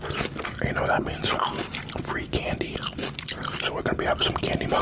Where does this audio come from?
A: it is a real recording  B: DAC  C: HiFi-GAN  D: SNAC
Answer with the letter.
A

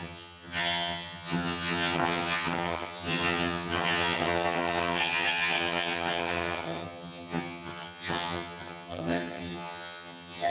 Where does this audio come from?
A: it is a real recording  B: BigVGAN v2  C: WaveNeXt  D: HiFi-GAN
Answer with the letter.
D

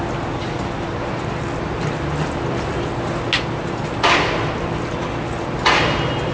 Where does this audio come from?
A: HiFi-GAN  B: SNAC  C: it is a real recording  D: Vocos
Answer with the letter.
C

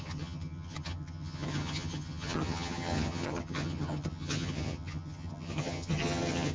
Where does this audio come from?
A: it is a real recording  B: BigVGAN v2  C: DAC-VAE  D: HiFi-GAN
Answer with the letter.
D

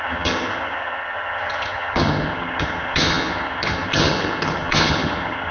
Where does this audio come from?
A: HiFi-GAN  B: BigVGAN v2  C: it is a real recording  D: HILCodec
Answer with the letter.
A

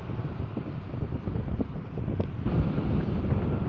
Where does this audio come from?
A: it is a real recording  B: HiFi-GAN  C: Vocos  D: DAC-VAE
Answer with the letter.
A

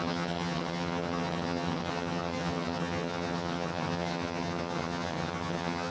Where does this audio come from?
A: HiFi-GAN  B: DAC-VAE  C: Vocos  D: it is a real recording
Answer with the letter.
A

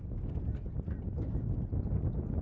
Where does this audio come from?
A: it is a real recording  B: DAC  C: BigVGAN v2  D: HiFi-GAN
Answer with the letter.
A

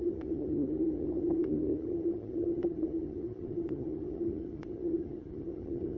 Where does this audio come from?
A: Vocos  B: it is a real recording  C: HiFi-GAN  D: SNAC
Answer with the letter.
C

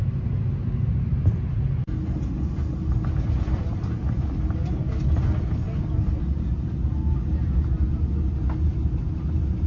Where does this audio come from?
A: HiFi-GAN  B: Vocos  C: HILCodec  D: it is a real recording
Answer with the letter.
D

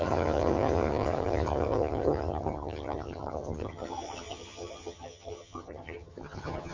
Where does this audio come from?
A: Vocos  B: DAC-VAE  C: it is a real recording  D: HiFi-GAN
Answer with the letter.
D